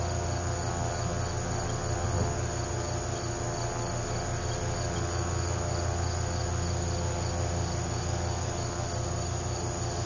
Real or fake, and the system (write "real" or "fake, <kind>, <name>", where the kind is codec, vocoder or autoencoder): real